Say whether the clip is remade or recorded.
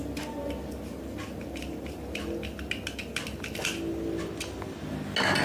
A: recorded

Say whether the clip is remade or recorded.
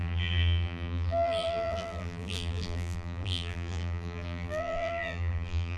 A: remade